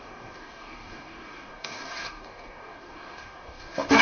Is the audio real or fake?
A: fake